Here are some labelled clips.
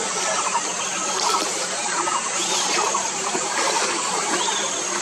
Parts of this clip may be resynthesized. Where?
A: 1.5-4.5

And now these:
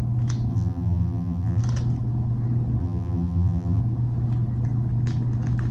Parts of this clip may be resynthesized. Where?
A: 0.5-1.6; 2.8-3.8